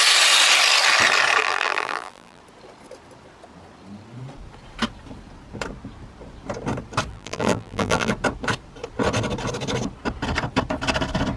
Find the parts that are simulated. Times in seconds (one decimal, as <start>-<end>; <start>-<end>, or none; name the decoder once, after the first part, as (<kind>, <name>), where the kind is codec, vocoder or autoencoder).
1.4-2.4 (vocoder, BigVGAN v2); 7.1-8.1